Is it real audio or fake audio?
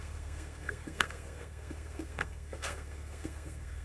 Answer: fake